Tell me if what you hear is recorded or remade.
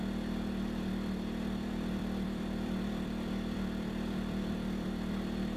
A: remade